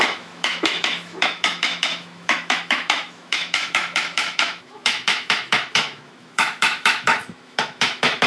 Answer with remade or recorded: remade